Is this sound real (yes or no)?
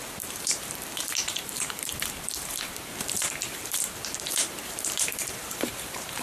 no